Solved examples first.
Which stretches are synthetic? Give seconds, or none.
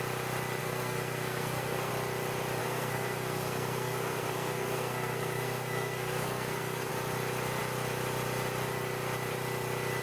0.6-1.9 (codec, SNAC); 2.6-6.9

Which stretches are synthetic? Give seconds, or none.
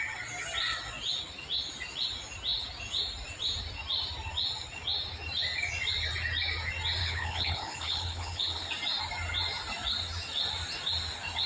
7.0-8.7 (codec, HILCodec)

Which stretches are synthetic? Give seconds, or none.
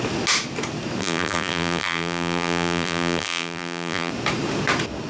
1.0-4.1 (vocoder, BigVGAN v2)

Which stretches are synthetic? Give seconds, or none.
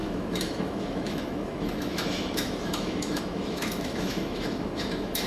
0.0-5.3 (autoencoder, DAC-VAE)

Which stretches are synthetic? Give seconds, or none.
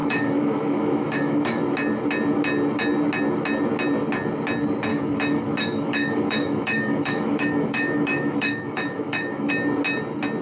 0.0-1.6 (autoencoder, DAC-VAE); 4.9-9.5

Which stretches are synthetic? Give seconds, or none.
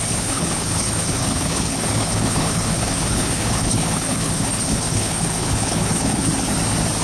0.0-6.3 (codec, HILCodec)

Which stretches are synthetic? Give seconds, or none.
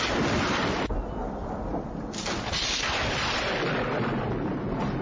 1.2-4.2 (vocoder, BigVGAN v2)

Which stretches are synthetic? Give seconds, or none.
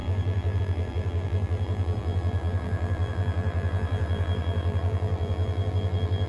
0.0-6.3 (vocoder, BigVGAN v2)